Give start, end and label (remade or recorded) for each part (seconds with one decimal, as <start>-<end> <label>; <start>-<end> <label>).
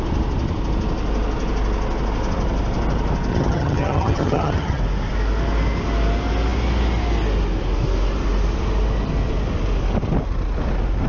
0.0-3.3 recorded; 3.3-4.8 remade; 4.8-11.1 recorded